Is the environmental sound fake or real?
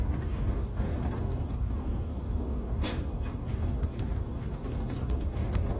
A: fake